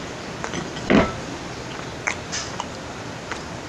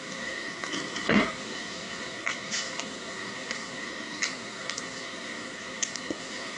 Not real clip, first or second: second